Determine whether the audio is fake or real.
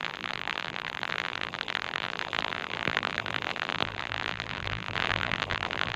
fake